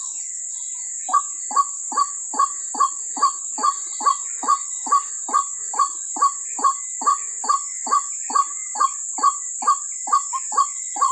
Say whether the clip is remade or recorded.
recorded